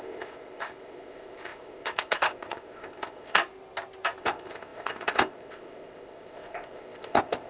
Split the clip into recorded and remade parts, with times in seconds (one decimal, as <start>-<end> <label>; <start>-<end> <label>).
0.0-3.4 remade; 3.4-4.2 recorded; 4.2-7.5 remade